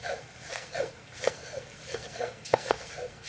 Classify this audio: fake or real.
fake